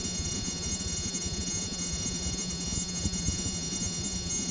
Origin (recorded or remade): remade